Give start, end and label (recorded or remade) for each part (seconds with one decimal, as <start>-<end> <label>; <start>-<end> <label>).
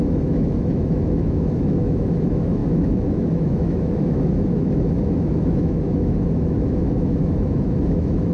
0.0-8.3 remade